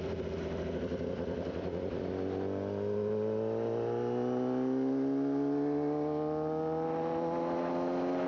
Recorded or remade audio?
recorded